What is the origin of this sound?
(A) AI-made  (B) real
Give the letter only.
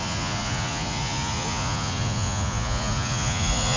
A